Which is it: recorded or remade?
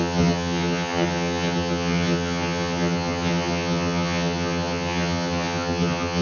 remade